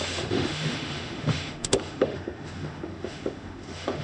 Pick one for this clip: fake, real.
fake